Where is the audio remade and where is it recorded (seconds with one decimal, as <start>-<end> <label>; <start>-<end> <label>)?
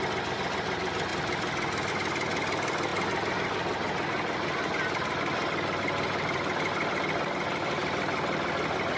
0.0-9.0 recorded